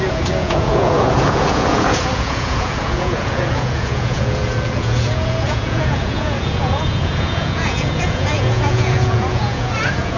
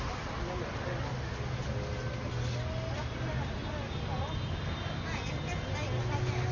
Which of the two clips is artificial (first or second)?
first